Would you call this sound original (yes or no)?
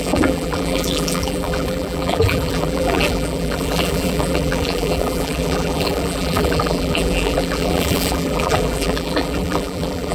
no